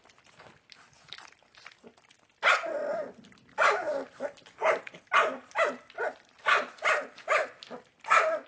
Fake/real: real